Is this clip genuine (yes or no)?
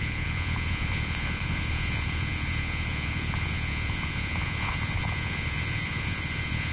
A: no